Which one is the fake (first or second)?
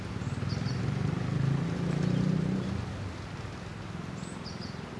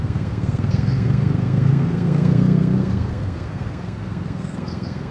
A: second